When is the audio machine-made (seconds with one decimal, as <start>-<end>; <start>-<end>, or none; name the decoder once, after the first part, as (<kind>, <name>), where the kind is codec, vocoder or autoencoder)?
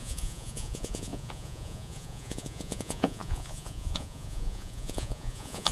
0.0-5.7 (vocoder, Vocos)